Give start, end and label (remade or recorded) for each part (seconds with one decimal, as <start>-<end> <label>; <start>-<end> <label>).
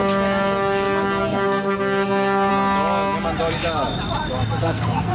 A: 0.0-1.2 recorded; 1.2-2.5 remade; 2.5-4.6 recorded; 4.6-5.1 remade